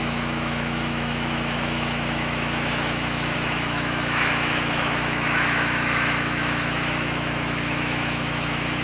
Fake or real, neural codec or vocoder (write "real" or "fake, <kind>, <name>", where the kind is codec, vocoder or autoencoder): fake, autoencoder, DAC-VAE